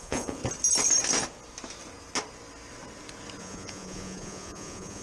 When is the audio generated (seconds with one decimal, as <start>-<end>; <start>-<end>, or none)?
0.0-0.4; 3.4-5.0